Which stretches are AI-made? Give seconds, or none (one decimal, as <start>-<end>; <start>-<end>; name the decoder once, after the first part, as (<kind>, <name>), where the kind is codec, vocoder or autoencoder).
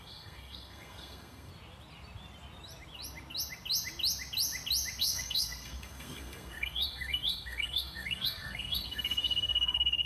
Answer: 0.0-1.5 (codec, SNAC); 5.0-10.1